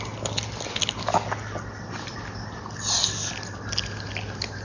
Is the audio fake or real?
real